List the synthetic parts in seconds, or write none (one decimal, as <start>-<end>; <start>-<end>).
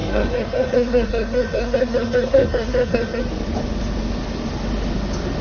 0.0-3.2